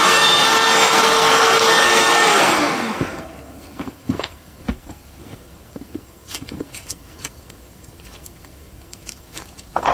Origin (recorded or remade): remade